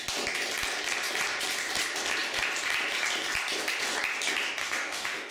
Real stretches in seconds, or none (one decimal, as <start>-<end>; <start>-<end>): 0.0-4.6